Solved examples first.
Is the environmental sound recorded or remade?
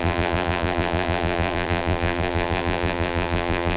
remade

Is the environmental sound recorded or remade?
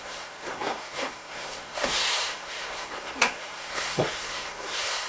remade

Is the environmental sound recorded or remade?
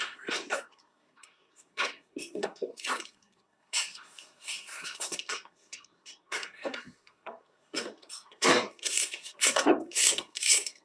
remade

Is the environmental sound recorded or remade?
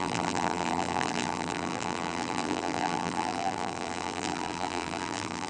remade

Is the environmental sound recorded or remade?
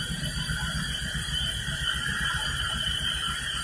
recorded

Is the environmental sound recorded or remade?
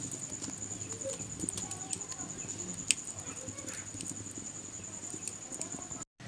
recorded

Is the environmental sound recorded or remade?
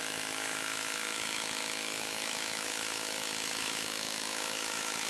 remade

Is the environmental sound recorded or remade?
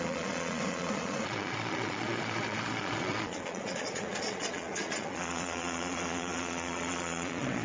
remade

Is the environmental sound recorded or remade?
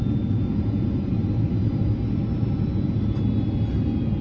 recorded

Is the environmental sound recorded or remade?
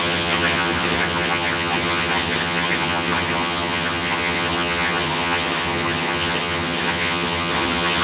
remade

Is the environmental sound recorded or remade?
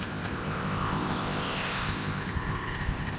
remade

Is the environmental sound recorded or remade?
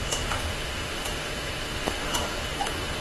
remade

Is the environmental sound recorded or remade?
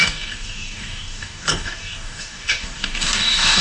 remade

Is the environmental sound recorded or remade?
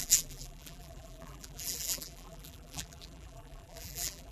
remade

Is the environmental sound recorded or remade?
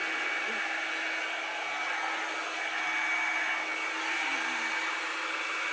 recorded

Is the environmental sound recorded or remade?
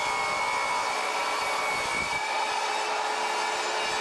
recorded